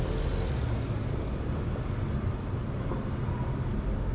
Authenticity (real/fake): real